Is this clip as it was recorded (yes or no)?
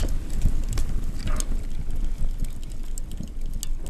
yes